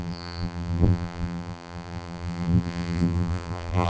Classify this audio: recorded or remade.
remade